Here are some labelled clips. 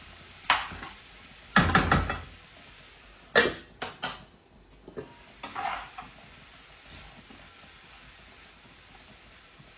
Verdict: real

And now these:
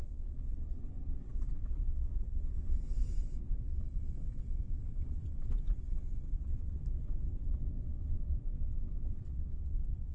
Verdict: fake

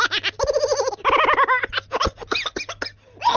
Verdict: real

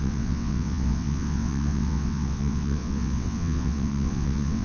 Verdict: fake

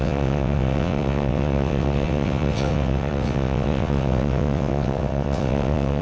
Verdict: fake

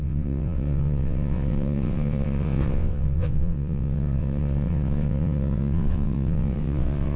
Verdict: fake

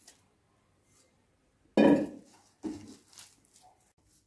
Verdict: real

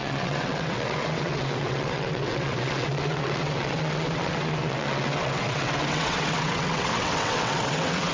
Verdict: fake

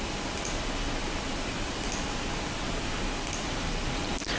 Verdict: real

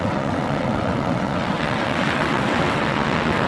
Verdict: fake